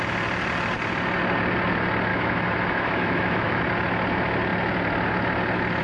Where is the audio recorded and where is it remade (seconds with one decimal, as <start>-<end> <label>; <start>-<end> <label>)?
0.0-2.1 recorded; 2.1-3.6 remade; 3.6-5.8 recorded

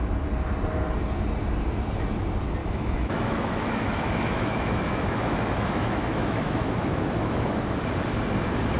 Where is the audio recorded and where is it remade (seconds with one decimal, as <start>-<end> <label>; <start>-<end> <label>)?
0.0-2.6 recorded; 2.6-7.6 remade; 7.6-8.8 recorded

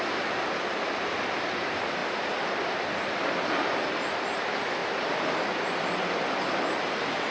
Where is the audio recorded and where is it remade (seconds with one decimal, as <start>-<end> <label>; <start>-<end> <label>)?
0.0-7.3 recorded

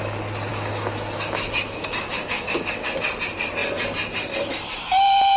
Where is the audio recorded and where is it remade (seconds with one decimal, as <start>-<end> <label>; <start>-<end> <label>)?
0.0-0.5 recorded; 0.5-2.8 remade; 2.8-5.4 recorded

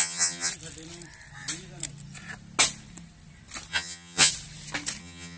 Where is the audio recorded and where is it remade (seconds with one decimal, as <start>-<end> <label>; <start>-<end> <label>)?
0.0-0.5 remade; 0.5-3.7 recorded; 3.7-4.3 remade; 4.3-5.0 recorded; 5.0-5.4 remade

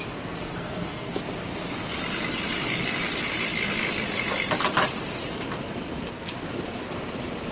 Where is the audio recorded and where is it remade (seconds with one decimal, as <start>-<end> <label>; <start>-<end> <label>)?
0.0-0.4 recorded; 0.4-1.2 remade; 1.2-7.5 recorded

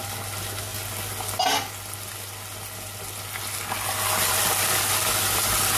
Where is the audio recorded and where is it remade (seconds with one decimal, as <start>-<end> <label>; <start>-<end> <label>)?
0.0-5.8 recorded

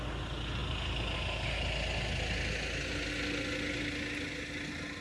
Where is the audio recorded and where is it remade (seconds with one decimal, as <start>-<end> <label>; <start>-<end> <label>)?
0.0-5.0 recorded